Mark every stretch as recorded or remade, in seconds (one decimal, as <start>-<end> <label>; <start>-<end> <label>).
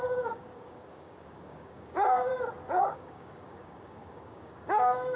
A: 0.0-2.3 remade; 2.3-2.8 recorded; 2.8-5.2 remade